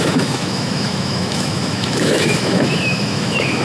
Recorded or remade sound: remade